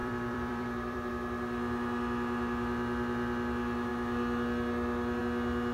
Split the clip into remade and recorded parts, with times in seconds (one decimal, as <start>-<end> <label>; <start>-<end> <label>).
0.0-1.1 remade; 1.1-5.7 recorded